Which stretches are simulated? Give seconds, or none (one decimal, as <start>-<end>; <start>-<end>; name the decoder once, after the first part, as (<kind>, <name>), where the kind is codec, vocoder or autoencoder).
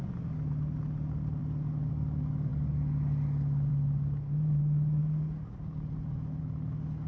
none